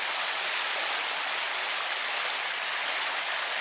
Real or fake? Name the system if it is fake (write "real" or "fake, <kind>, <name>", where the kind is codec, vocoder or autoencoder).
real